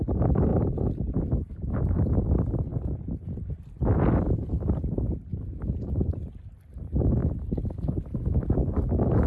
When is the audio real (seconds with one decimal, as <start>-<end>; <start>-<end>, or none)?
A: 0.0-0.5; 1.3-7.2; 8.0-9.3

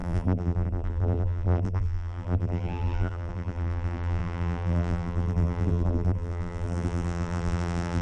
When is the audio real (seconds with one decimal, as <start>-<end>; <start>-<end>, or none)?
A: none

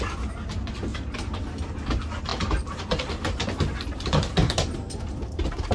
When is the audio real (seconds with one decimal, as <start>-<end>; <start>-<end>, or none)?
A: 0.0-0.9; 1.8-2.3; 2.8-4.4; 5.0-5.7

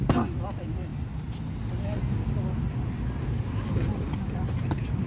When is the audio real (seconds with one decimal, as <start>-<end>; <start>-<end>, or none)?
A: 0.0-5.1